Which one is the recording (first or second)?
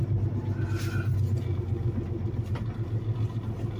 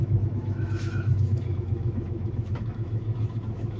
first